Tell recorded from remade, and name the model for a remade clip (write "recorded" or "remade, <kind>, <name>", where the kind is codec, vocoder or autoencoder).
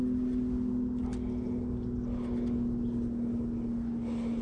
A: recorded